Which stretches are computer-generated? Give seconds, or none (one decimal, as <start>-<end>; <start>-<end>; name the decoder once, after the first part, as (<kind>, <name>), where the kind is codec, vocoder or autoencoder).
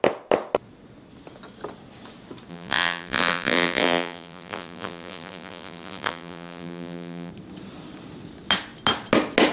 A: 2.5-7.3 (vocoder, BigVGAN v2)